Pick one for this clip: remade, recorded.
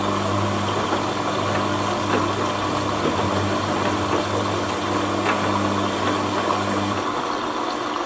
recorded